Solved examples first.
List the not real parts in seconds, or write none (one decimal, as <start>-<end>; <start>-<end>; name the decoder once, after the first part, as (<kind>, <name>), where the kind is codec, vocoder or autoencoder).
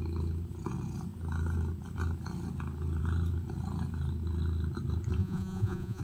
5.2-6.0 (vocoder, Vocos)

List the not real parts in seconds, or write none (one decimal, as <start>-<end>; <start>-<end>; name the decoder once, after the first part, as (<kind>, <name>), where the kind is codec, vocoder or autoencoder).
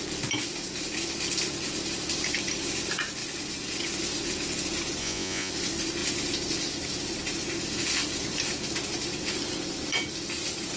5.0-5.5 (vocoder, Vocos)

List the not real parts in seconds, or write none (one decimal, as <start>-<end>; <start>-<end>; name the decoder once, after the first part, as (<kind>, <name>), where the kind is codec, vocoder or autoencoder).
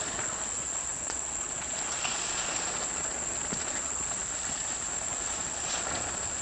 0.0-4.2 (vocoder, Vocos); 5.0-6.4